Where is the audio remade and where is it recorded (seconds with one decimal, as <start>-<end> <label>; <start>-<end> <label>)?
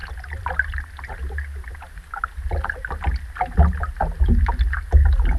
0.0-5.4 recorded